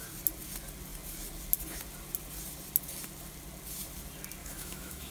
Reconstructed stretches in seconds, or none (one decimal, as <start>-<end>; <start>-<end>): 4.4-5.1